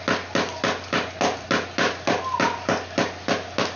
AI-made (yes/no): no